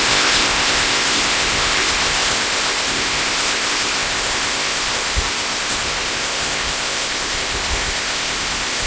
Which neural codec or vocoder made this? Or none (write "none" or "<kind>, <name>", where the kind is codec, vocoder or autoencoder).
codec, ZipCodec